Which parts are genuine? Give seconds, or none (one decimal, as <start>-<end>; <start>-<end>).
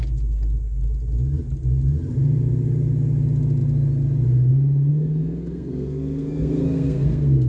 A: 0.0-4.9